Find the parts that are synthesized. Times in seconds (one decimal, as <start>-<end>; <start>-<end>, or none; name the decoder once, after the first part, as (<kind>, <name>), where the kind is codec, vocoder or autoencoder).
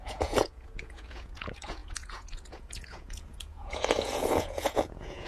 0.0-5.3 (vocoder, Vocos)